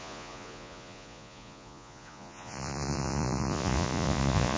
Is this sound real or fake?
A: fake